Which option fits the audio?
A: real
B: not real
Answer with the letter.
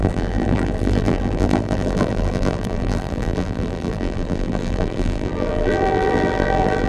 B